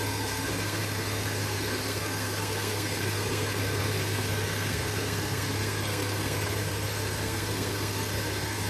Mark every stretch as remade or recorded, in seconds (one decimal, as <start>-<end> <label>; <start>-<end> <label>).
0.0-8.7 remade